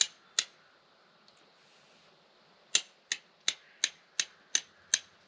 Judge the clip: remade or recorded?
recorded